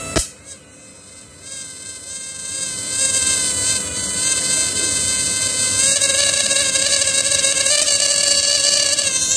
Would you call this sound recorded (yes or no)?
no